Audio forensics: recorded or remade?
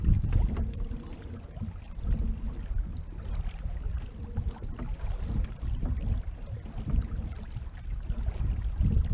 recorded